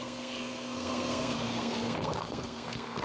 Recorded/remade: remade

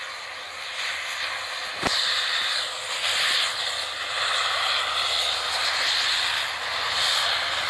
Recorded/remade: recorded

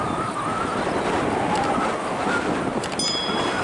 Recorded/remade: recorded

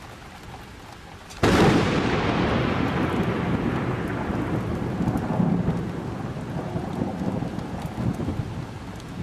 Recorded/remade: recorded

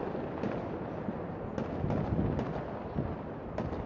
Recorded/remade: recorded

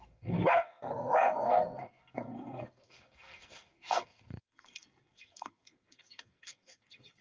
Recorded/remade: remade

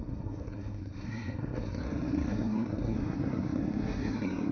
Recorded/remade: remade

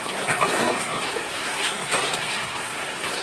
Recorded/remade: remade